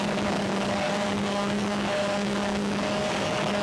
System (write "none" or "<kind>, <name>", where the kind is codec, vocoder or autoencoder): codec, DAC